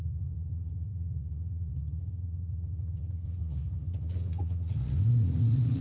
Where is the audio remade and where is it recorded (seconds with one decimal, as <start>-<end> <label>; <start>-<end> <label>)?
0.0-5.8 remade